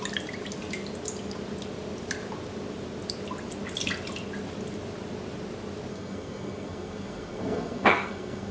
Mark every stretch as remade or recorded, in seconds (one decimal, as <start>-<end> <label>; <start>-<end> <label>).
0.0-5.9 recorded; 5.9-8.5 remade